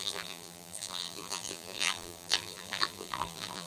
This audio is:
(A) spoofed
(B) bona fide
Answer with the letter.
A